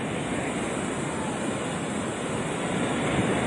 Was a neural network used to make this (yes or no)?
no